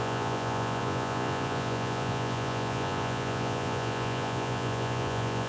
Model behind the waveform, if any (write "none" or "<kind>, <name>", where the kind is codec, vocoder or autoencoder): vocoder, Vocos